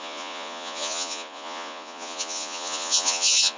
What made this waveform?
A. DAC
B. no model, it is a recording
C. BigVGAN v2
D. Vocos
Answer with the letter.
D